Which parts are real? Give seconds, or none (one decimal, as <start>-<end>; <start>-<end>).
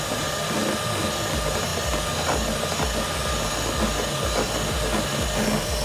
0.0-5.8